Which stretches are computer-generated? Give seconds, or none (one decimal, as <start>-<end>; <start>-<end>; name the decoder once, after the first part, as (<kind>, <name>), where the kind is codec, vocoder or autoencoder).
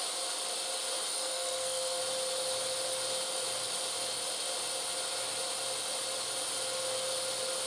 1.1-2.0 (codec, SNAC)